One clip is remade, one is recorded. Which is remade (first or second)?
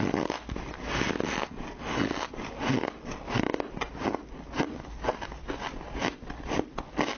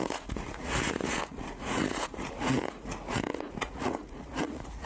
second